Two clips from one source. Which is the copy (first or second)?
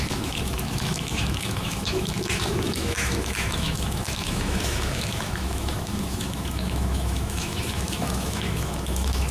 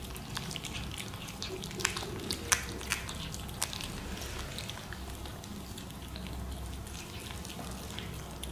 first